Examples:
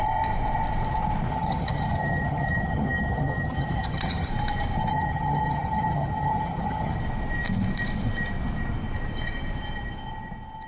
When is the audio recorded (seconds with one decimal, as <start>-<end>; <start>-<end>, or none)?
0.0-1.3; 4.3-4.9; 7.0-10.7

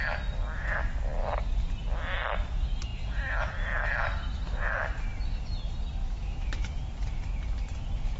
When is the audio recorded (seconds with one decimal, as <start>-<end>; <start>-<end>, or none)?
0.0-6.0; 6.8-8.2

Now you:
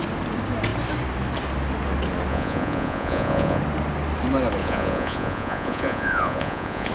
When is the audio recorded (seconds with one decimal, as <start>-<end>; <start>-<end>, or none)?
0.0-2.3; 3.6-4.6